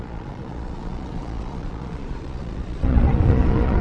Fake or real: fake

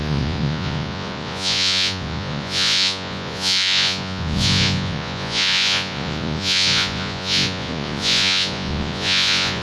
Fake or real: fake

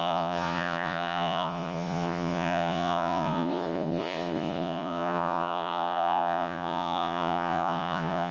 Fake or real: fake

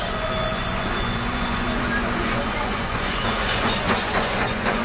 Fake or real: fake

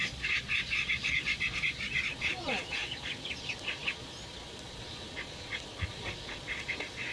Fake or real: fake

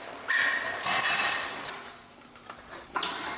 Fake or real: real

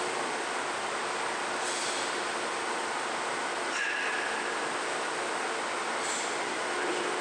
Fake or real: real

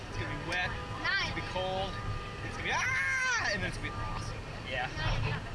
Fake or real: real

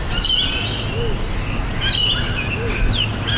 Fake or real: real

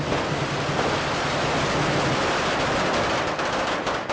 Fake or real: real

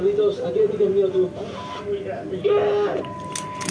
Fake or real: real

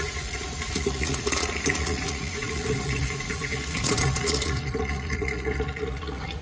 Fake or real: fake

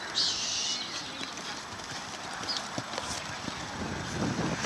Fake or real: real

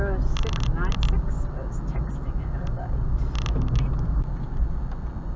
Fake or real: real